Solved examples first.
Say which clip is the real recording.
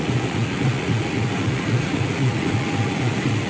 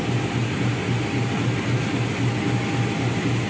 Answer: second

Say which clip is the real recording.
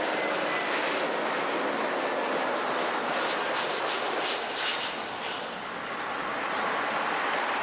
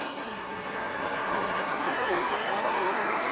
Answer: first